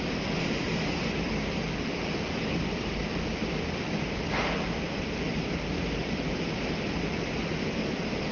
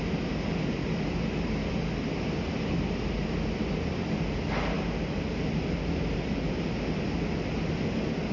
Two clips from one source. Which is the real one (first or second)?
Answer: second